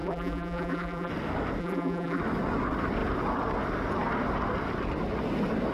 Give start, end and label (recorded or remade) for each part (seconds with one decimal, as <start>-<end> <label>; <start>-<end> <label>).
0.0-1.1 remade; 1.1-1.6 recorded; 1.6-2.2 remade; 2.2-5.7 recorded